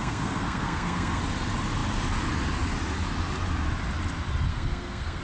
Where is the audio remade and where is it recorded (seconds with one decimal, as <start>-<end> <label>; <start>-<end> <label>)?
0.0-1.2 remade; 1.2-4.5 recorded; 4.5-5.2 remade